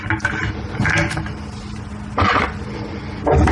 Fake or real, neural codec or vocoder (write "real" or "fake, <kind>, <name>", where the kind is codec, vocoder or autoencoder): real